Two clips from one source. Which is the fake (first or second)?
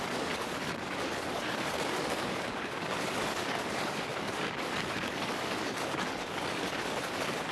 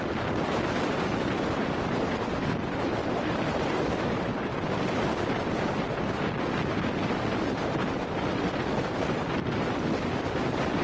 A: first